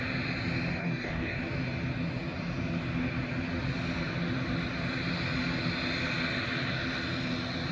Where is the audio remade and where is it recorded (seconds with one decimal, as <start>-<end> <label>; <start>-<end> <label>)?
0.0-0.8 recorded; 0.8-1.4 remade; 1.4-7.7 recorded